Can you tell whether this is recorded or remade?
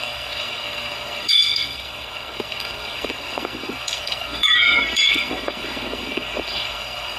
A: remade